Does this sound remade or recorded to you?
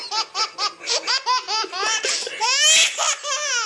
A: recorded